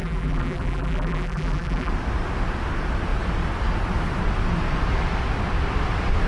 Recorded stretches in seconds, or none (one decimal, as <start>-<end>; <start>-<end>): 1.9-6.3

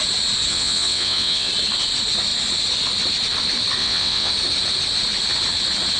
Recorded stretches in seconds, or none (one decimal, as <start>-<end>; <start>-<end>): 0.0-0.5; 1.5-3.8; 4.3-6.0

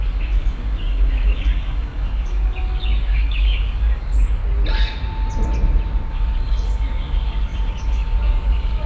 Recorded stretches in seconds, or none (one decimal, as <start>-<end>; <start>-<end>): 4.4-6.1

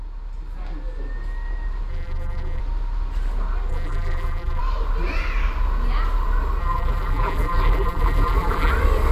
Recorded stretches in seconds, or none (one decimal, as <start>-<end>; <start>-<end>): 0.0-1.9; 2.6-3.7; 4.6-6.6; 8.7-9.1

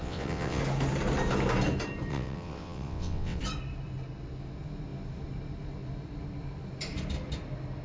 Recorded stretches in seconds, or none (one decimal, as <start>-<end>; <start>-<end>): 0.6-2.1; 3.4-7.8

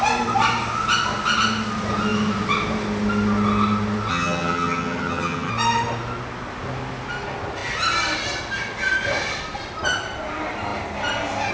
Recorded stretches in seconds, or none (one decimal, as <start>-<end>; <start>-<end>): 0.0-4.1; 5.5-11.5